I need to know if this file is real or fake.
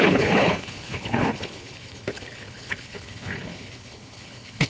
fake